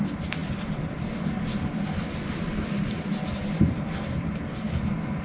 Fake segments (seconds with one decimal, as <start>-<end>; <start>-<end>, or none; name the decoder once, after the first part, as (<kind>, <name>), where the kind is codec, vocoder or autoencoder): none